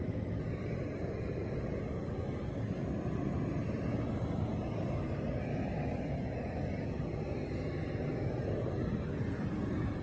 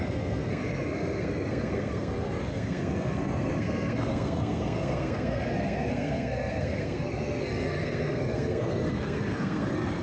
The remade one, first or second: second